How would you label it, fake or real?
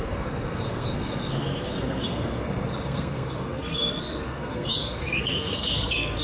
fake